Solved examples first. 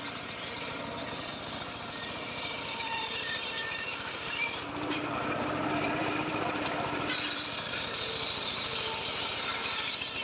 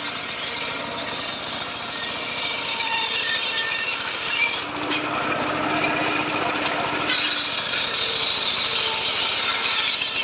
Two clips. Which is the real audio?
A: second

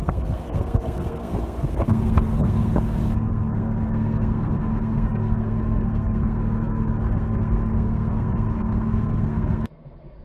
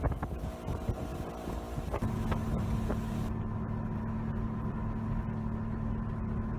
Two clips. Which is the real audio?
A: second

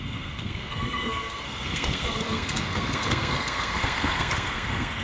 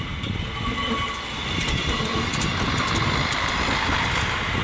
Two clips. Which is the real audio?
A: second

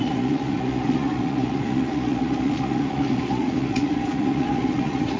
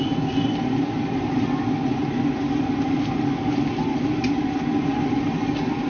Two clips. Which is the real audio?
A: second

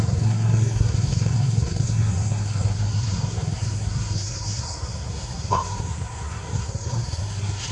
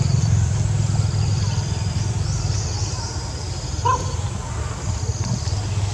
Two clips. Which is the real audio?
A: second